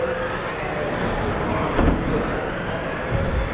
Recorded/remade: recorded